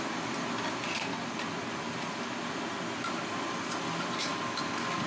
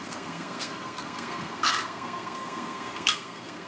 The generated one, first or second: second